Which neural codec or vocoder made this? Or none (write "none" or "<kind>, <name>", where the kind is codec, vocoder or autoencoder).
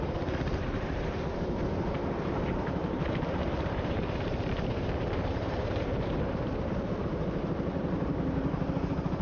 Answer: vocoder, BigVGAN v2